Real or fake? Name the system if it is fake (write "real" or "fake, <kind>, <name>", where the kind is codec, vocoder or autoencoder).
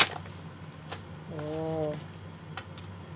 real